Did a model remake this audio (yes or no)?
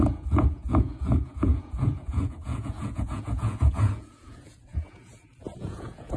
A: yes